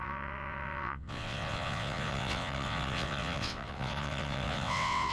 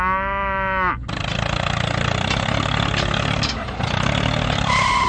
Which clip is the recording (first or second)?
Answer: second